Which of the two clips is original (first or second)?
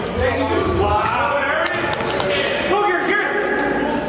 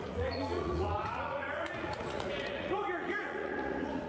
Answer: first